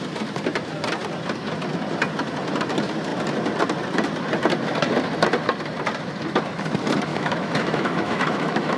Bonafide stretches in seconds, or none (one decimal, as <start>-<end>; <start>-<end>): 0.0-7.1